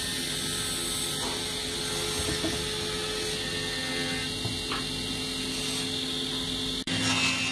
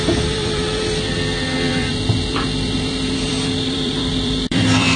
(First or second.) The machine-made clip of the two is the second